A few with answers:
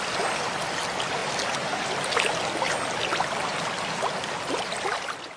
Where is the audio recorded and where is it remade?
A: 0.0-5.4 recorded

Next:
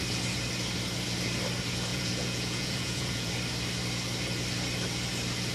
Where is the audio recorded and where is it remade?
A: 0.0-1.9 recorded; 1.9-3.3 remade; 3.3-5.5 recorded

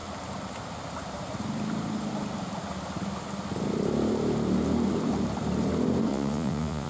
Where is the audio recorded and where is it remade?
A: 0.0-6.1 recorded; 6.1-6.9 remade

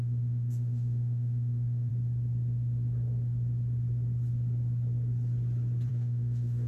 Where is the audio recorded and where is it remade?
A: 0.0-1.9 remade; 1.9-5.9 recorded; 5.9-6.7 remade

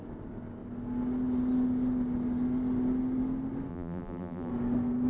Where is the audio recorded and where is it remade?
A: 0.0-3.7 recorded; 3.7-4.5 remade; 4.5-5.1 recorded

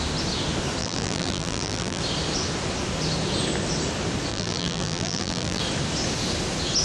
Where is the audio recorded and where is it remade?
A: 0.0-0.8 recorded; 0.8-2.0 remade; 2.0-4.3 recorded; 4.3-5.6 remade; 5.6-6.8 recorded

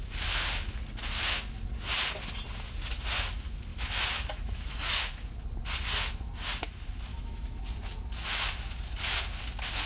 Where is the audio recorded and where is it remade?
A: 0.0-3.7 recorded; 3.7-5.0 remade; 5.0-7.1 recorded; 7.1-7.6 remade; 7.6-9.9 recorded

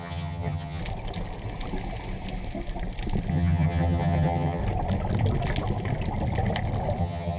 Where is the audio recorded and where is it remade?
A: 0.0-0.8 remade; 0.8-3.3 recorded; 3.3-4.6 remade; 4.6-7.0 recorded; 7.0-7.4 remade